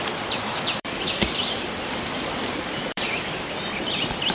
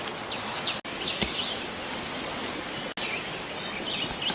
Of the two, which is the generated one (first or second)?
first